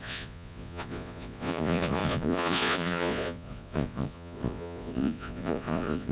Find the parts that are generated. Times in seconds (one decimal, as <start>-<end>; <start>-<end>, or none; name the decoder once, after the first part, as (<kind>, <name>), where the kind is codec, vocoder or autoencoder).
0.0-6.1 (vocoder, Vocos)